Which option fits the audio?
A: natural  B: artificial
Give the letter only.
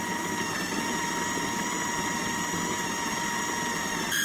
A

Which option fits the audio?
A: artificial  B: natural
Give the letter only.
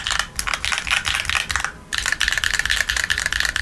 A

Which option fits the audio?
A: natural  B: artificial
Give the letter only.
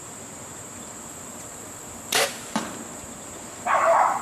B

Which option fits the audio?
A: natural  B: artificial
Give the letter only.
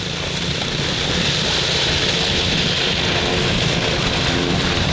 B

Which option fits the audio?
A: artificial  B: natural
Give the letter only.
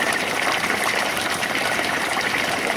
A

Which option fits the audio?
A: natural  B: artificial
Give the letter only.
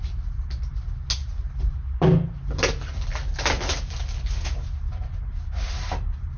A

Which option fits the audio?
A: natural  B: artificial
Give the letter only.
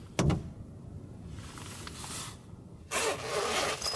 A